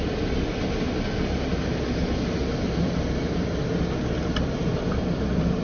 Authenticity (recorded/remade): recorded